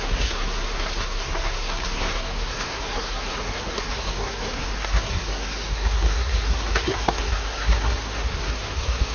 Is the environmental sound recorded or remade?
remade